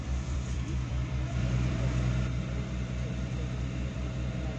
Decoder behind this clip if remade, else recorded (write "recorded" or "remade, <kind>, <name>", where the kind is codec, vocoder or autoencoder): remade, vocoder, BigVGAN v2